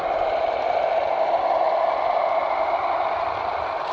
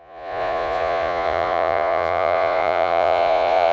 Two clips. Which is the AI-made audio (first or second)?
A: second